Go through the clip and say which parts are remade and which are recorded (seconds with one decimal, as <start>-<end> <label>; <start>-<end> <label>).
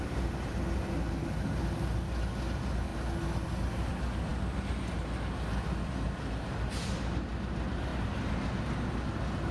0.0-9.5 recorded